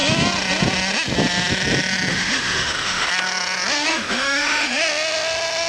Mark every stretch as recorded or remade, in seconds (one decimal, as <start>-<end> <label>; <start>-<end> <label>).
0.0-2.1 recorded; 2.1-3.1 remade; 3.1-3.9 recorded; 3.9-4.8 remade; 4.8-5.7 recorded